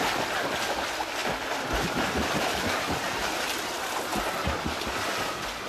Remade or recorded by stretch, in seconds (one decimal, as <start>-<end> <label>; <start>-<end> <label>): 0.0-5.7 recorded